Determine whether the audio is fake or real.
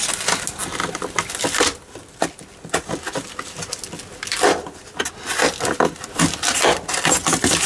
real